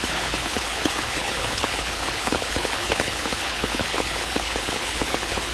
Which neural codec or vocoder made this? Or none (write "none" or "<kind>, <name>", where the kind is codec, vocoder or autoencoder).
codec, HILCodec